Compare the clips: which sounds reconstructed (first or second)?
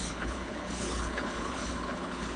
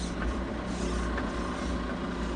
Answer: first